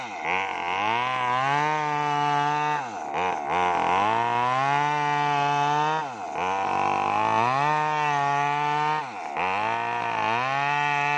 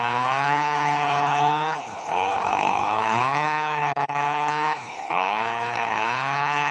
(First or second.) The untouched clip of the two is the first